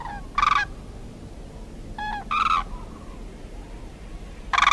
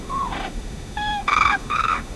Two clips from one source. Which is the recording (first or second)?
first